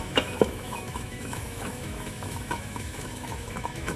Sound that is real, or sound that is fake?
fake